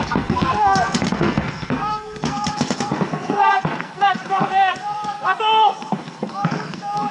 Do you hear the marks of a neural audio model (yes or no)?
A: yes